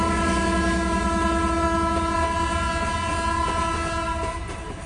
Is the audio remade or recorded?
recorded